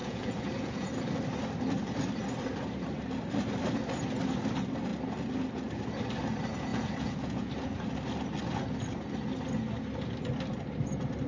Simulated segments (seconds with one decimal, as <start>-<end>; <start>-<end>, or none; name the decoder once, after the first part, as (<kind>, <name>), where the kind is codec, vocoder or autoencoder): 0.0-0.9 (vocoder, Vocos); 6.7-7.5